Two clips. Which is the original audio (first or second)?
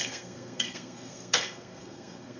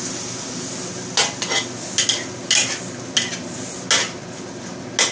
second